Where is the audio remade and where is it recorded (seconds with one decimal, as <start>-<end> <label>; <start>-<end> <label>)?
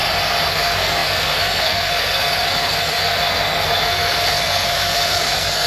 0.0-0.5 recorded; 0.5-5.7 remade